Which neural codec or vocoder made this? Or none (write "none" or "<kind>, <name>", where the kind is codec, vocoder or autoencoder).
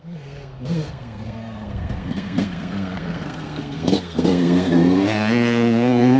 codec, SNAC